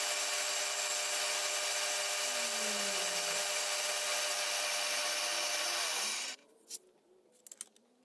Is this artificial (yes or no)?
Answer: no